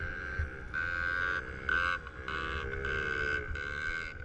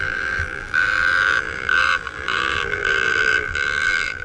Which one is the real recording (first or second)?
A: first